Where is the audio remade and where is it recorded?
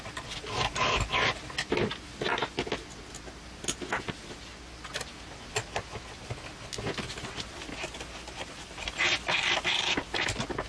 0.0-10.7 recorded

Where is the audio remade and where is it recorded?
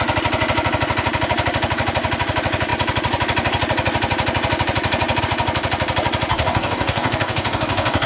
0.0-6.3 recorded; 6.3-8.1 remade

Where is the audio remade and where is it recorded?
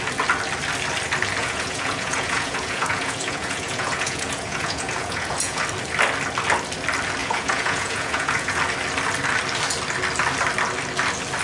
0.0-1.4 recorded; 1.4-5.6 remade; 5.6-7.2 recorded; 7.2-8.6 remade; 8.6-11.4 recorded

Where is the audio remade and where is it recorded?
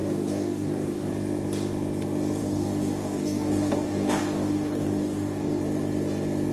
0.0-1.1 remade; 1.1-2.4 recorded; 2.4-5.6 remade; 5.6-6.5 recorded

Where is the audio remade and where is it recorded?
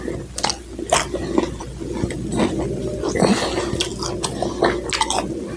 0.0-5.6 recorded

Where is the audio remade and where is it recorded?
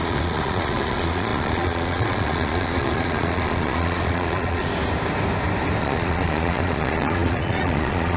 0.0-4.7 remade; 4.7-5.8 recorded; 5.8-8.2 remade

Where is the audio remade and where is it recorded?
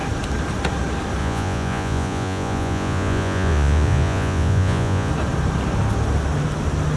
0.0-1.2 recorded; 1.2-5.1 remade; 5.1-7.0 recorded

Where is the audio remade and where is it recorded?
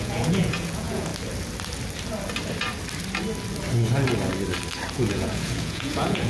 0.0-1.1 remade; 1.1-4.9 recorded; 4.9-6.3 remade